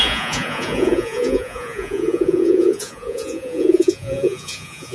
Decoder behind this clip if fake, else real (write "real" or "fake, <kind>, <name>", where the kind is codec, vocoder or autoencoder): fake, vocoder, Vocos